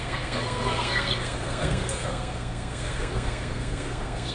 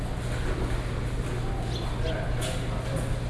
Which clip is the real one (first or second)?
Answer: second